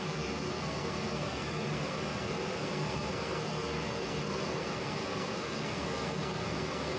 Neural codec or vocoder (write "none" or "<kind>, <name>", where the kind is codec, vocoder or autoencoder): codec, SNAC